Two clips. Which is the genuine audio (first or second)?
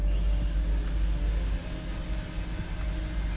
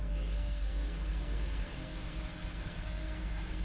first